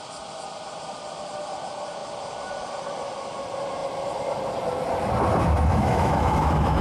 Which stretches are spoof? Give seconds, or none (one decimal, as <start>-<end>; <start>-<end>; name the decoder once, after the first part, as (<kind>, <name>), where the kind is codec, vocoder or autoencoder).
5.7-6.8 (autoencoder, DAC-VAE)